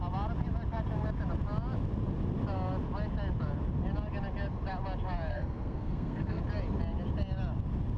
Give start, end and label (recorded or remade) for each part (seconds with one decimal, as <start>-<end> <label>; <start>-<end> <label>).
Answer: 0.0-5.3 recorded; 5.3-6.4 remade; 6.4-8.0 recorded